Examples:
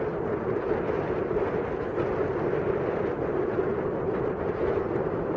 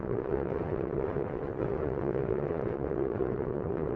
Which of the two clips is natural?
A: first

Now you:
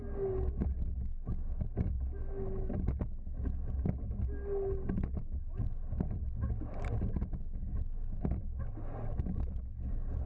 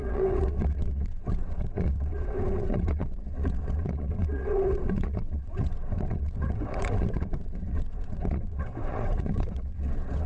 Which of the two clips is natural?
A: first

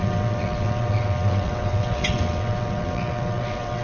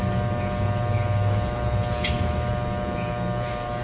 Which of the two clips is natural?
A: second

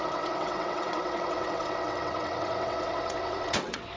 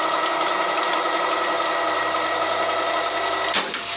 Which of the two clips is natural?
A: second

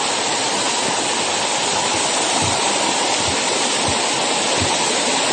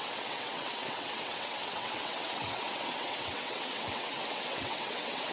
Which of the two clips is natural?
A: first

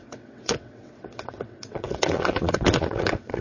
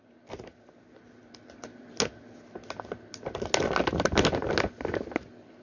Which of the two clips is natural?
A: second